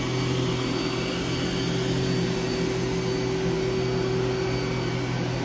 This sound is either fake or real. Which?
real